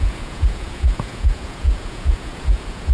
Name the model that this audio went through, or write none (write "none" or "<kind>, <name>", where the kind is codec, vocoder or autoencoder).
vocoder, Vocos